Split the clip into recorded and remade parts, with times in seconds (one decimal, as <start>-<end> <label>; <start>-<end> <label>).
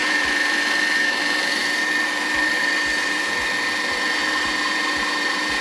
0.0-5.6 remade